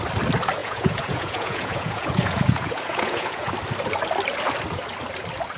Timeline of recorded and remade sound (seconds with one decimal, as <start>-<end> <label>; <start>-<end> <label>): 0.0-0.6 recorded; 0.6-3.5 remade; 3.5-5.6 recorded